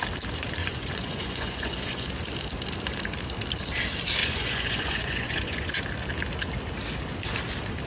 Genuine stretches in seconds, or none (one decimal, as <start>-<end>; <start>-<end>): 0.0-0.6; 2.1-4.2; 5.8-7.9